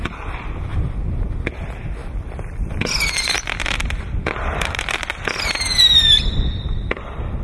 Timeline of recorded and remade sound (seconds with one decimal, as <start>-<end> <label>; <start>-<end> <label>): 0.0-7.4 remade